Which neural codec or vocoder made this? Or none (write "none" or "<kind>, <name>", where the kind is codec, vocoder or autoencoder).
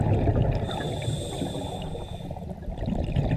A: none